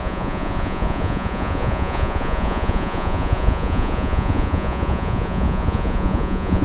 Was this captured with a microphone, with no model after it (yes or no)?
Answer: no